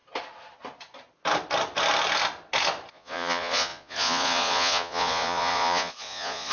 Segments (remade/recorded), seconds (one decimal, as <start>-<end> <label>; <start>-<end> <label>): 0.0-2.9 recorded; 2.9-6.5 remade